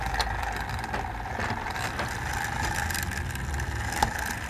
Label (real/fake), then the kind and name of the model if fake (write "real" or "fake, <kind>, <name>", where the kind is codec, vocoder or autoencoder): real